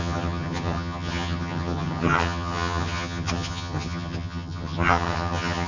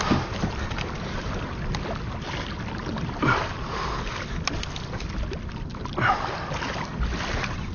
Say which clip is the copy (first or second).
first